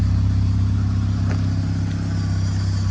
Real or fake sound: real